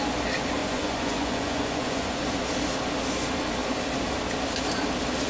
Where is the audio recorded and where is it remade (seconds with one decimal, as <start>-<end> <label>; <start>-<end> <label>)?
0.0-0.6 recorded; 0.6-2.2 remade; 2.2-5.3 recorded